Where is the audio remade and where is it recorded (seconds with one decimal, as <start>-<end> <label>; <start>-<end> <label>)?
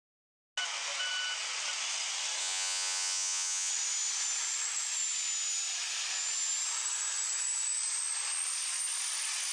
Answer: 0.0-2.4 recorded; 2.4-3.7 remade; 3.7-9.5 recorded